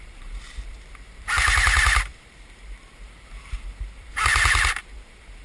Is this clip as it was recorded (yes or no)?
no